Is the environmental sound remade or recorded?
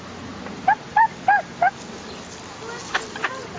recorded